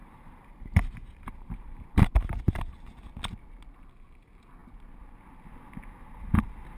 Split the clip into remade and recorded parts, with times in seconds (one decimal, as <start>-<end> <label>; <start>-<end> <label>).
0.0-3.0 remade; 3.0-6.8 recorded